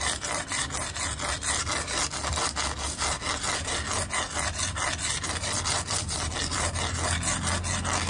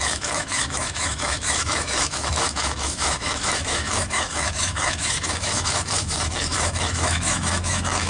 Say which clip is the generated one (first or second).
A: second